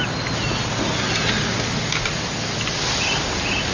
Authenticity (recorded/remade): recorded